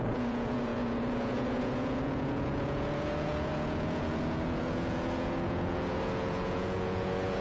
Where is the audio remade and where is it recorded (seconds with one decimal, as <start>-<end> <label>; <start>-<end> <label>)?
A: 0.0-7.4 remade